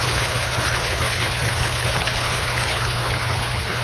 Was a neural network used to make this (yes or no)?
yes